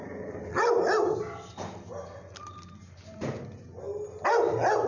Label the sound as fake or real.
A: real